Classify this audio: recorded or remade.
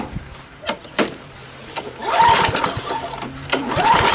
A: remade